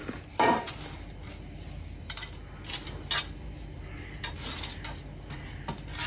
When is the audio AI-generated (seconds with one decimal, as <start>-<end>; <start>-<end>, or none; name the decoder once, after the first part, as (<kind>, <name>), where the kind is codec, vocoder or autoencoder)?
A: 0.0-0.7 (vocoder, BigVGAN v2)